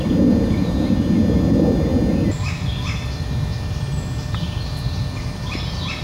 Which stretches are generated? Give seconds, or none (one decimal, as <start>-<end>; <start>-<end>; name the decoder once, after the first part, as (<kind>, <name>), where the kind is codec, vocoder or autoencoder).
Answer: none